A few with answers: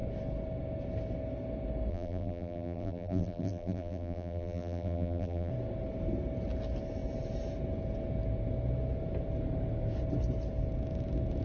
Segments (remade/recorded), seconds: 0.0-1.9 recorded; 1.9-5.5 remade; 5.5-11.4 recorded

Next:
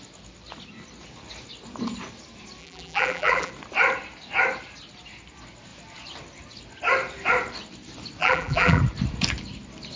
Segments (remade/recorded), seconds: 0.0-2.6 recorded; 2.6-3.5 remade; 3.5-8.2 recorded; 8.2-8.8 remade; 8.8-10.0 recorded

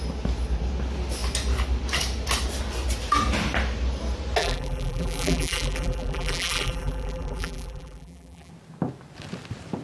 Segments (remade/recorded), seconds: 0.0-4.4 recorded; 4.4-8.5 remade; 8.5-9.8 recorded

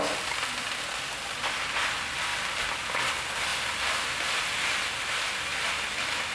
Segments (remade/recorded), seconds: 0.0-2.3 recorded; 2.3-3.1 remade; 3.1-6.3 recorded

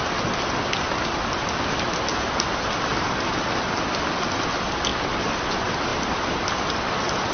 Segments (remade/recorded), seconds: 0.0-4.9 recorded; 4.9-5.5 remade; 5.5-7.3 recorded